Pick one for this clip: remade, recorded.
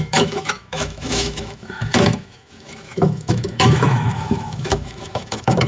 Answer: remade